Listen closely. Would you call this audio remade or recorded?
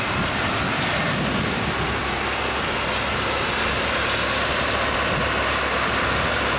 recorded